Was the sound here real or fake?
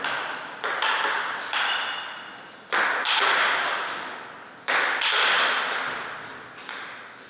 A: real